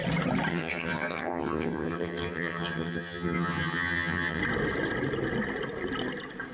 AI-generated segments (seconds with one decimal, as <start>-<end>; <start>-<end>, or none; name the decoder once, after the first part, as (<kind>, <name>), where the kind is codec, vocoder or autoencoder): 0.5-4.4 (vocoder, HiFi-GAN)